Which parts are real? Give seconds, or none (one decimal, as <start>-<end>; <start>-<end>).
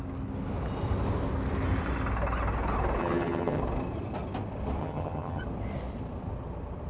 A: 0.0-3.0; 3.6-4.8; 5.4-6.9